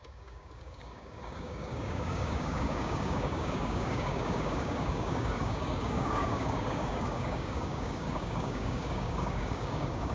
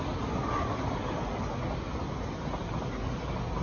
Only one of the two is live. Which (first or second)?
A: second